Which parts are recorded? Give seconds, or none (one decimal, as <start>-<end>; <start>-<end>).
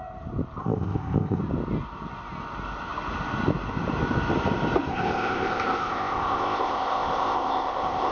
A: 0.0-0.6; 1.4-4.9